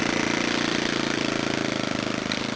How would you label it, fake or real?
real